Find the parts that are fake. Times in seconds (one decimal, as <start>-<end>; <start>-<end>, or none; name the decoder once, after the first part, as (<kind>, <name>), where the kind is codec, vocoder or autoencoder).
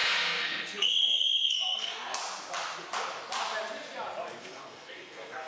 0.0-2.2 (codec, SNAC); 4.4-5.5